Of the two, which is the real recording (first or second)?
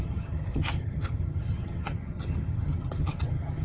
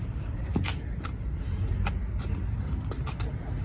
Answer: second